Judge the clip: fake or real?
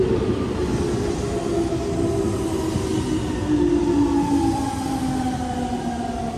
real